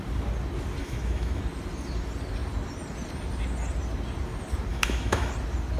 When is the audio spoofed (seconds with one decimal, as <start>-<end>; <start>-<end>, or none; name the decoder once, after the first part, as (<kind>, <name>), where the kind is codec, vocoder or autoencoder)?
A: 0.8-1.4 (autoencoder, DAC-VAE); 4.7-5.3